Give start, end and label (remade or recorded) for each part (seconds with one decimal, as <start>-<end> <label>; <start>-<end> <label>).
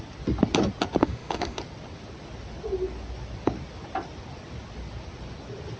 0.0-1.0 recorded; 1.0-1.6 remade; 1.6-5.8 recorded